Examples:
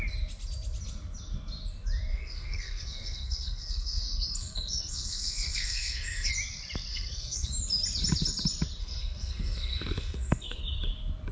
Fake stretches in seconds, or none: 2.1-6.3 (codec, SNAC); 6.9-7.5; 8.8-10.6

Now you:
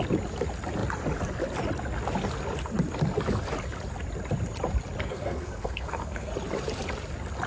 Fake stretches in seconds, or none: 5.1-6.3 (codec, SNAC)

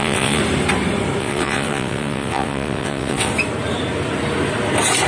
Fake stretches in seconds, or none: 0.0-0.4 (vocoder, WaveNeXt); 1.2-3.3